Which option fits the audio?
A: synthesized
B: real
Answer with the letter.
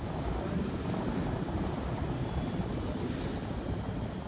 B